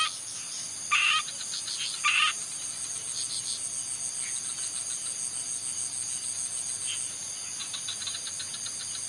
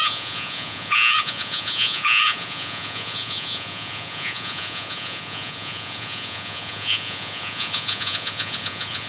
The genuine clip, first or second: first